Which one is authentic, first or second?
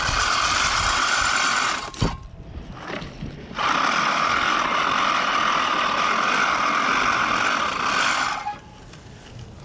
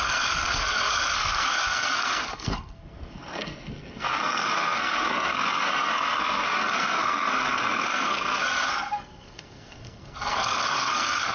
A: first